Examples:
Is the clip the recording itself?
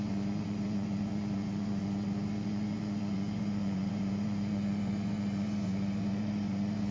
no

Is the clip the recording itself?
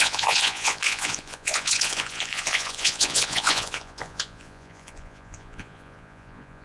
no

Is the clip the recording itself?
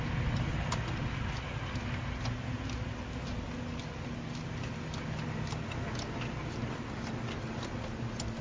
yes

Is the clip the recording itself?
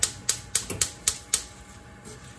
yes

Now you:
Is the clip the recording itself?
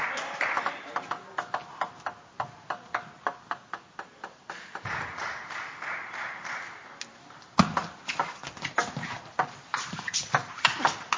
yes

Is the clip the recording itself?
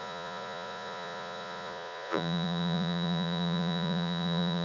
no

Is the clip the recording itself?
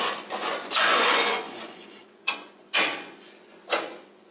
no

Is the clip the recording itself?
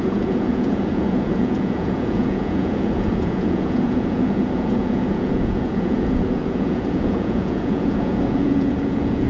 no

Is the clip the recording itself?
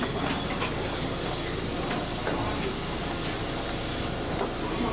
yes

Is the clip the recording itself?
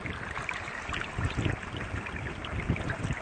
yes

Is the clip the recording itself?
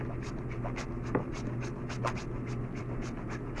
yes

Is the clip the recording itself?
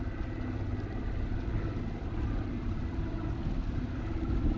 yes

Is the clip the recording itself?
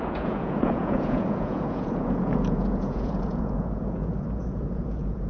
no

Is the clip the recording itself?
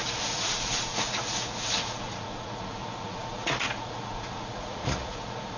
no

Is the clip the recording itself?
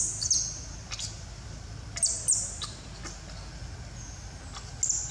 yes